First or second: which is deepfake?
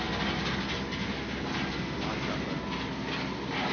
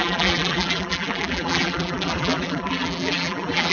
second